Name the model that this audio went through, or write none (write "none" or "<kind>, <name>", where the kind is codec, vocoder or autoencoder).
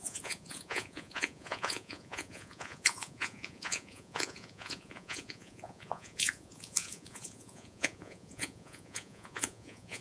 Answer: vocoder, Vocos